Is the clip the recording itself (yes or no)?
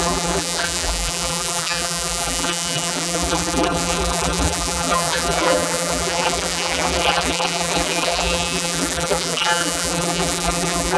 no